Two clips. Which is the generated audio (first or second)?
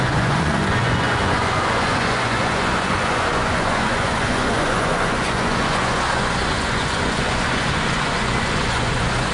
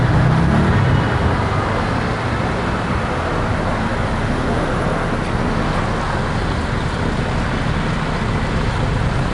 first